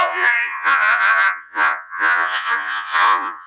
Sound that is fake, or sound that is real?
fake